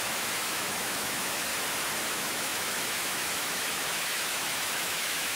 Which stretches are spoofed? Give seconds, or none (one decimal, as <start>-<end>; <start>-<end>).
0.0-1.5; 2.1-5.4